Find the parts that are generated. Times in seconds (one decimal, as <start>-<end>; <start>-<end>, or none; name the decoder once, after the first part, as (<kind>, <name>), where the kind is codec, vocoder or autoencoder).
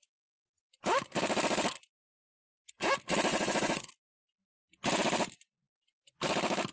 2.4-2.9 (vocoder, Vocos); 3.3-3.9